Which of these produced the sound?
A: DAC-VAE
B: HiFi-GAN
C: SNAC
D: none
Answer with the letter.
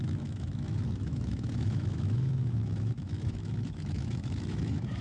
A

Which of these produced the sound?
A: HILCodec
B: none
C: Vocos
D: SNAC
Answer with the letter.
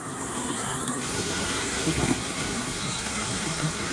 D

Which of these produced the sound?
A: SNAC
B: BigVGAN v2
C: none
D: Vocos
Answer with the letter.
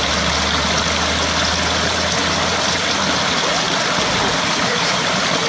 C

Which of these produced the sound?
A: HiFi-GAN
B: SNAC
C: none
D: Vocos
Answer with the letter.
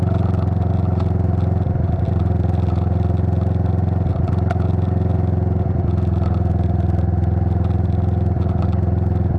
C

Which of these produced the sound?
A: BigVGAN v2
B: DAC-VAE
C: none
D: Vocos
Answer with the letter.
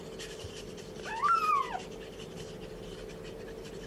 A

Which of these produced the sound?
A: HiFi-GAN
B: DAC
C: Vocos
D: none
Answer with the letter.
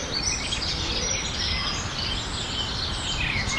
D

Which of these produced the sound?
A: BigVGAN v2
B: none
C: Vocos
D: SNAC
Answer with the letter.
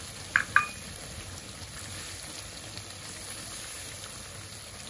B